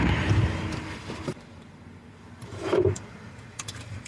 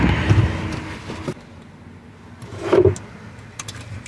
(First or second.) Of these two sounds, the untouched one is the second